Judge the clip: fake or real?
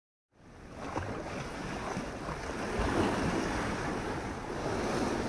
real